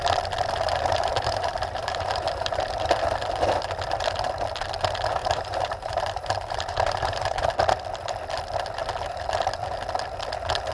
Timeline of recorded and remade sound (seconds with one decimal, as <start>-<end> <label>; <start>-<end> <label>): 0.0-1.1 recorded; 1.1-2.5 remade; 2.5-5.2 recorded; 5.2-7.5 remade; 7.5-10.7 recorded